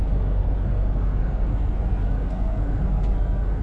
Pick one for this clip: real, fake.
fake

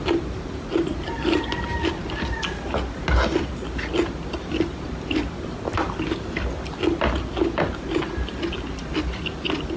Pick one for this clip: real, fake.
real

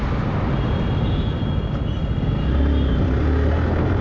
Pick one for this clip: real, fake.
real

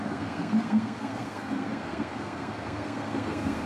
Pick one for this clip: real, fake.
fake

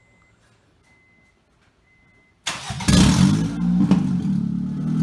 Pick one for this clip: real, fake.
real